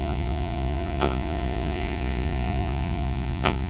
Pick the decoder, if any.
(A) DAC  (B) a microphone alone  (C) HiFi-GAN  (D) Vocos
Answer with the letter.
D